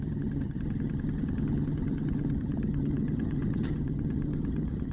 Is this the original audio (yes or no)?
no